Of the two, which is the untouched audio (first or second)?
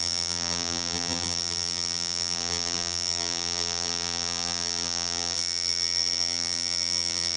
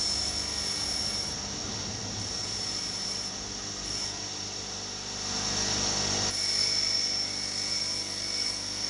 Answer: second